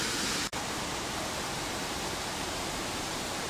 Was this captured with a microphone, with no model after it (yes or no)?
no